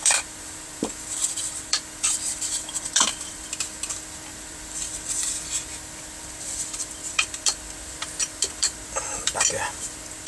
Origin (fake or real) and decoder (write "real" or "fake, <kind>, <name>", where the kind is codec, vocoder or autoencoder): fake, vocoder, BigVGAN v2